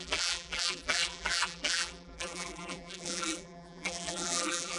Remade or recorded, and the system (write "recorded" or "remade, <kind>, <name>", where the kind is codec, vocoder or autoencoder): remade, vocoder, BigVGAN v2